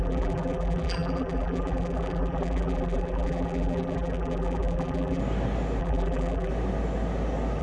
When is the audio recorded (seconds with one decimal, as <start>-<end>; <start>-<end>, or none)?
5.2-5.8; 6.5-7.6